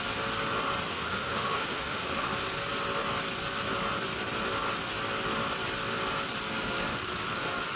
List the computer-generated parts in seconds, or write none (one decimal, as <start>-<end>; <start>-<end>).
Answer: 0.9-2.3